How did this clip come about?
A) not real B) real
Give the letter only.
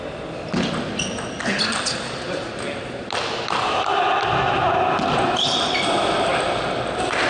B